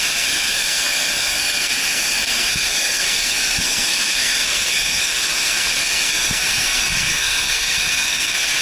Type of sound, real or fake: fake